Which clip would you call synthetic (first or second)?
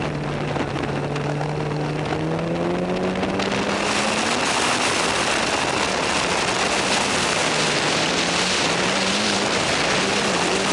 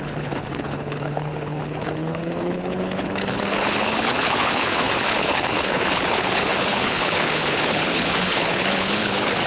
second